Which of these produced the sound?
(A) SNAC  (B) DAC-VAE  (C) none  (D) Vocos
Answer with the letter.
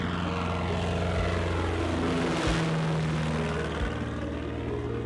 C